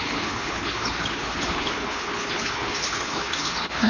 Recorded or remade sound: remade